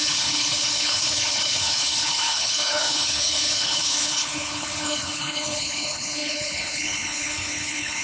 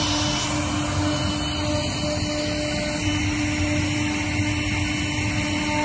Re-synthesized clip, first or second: first